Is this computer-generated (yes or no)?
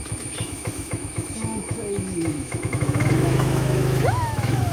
yes